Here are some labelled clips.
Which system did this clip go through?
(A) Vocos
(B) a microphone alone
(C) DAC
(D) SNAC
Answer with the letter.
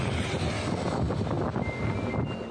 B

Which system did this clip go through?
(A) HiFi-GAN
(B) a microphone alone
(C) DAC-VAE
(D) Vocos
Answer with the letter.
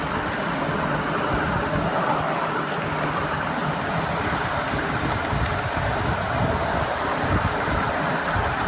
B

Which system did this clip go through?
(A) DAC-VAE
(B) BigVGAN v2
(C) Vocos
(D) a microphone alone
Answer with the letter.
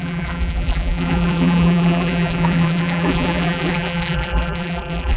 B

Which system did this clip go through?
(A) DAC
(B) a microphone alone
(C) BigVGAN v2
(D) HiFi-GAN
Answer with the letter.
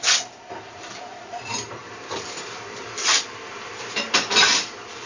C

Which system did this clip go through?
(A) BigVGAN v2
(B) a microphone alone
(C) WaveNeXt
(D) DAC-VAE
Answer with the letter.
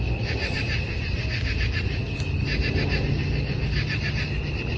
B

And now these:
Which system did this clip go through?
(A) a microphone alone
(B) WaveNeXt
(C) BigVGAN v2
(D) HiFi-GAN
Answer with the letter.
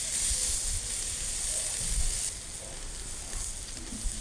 A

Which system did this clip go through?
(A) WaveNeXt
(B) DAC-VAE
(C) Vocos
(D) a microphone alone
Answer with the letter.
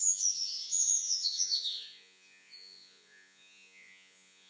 C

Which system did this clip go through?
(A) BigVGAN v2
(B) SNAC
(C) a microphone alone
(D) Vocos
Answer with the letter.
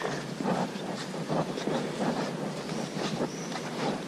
A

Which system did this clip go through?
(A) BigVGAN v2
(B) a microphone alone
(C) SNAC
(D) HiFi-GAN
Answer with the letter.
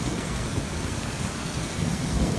C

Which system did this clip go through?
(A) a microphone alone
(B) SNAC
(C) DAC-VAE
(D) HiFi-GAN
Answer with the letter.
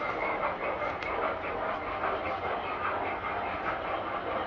A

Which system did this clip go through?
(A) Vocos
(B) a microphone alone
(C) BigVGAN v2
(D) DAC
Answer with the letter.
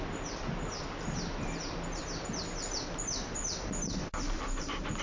B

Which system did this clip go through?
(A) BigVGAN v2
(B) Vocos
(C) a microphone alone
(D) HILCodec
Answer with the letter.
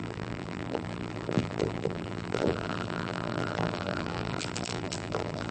A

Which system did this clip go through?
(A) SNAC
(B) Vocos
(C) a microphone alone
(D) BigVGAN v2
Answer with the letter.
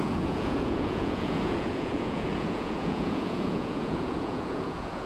B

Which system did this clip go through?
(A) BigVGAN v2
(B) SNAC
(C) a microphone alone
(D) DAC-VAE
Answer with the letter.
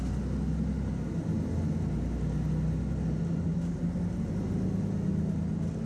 C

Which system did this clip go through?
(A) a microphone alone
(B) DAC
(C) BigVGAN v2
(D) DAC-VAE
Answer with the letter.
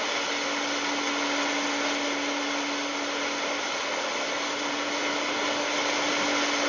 A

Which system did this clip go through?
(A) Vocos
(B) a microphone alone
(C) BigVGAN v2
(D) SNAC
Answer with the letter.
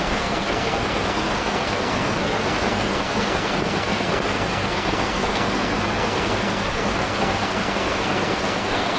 D